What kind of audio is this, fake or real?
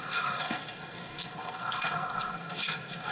fake